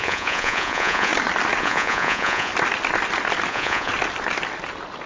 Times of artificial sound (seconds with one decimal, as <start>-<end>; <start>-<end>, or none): 0.0-1.1; 1.6-2.5; 3.5-3.9